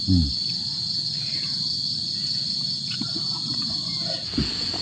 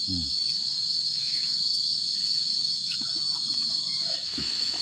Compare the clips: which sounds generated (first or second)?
second